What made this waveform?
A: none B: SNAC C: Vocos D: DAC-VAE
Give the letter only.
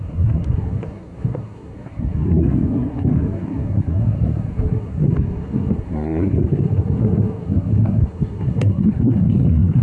B